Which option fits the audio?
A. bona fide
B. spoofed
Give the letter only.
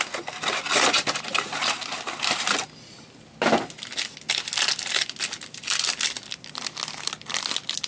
A